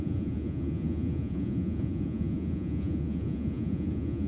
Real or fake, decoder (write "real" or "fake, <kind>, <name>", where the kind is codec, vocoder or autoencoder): fake, vocoder, Vocos